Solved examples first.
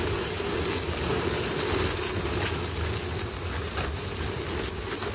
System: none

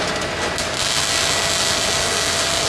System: none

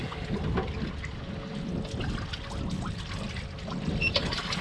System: none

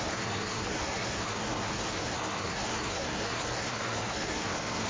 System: codec, SNAC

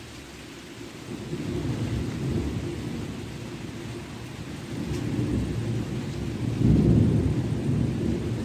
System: none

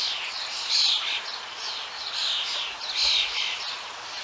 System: none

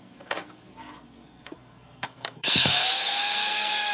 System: codec, SNAC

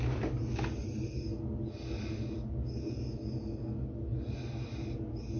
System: none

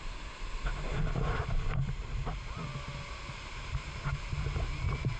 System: none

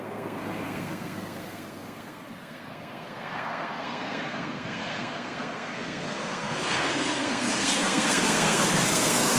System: codec, SNAC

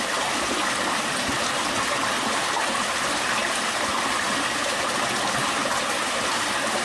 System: none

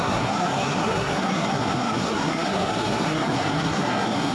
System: codec, SNAC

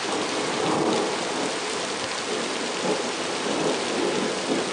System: none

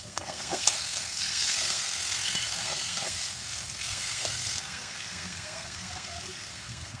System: codec, SNAC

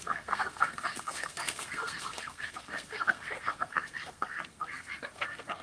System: codec, SNAC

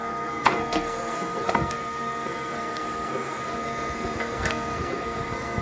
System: codec, SNAC